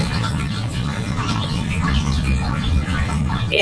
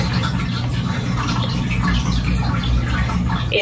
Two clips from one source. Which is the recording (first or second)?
second